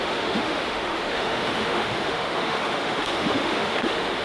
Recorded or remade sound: remade